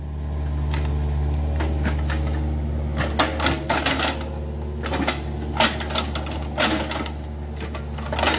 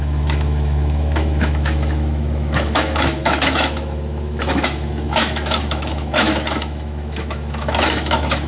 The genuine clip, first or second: first